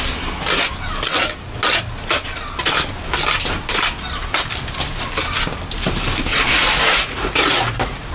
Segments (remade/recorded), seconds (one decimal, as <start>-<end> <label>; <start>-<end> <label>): 0.0-6.3 recorded; 6.3-8.1 remade